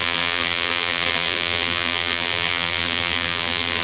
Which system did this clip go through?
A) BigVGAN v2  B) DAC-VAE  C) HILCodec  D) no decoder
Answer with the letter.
A